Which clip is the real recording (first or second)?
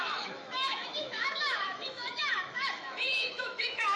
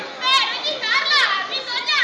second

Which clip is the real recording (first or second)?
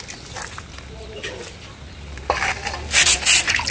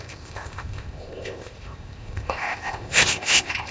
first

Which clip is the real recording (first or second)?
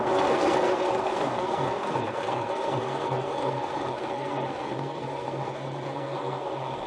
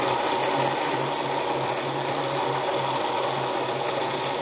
second